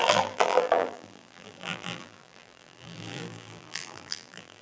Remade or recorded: remade